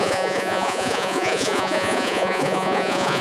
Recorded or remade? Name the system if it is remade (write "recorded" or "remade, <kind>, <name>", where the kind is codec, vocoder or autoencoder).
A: remade, vocoder, Vocos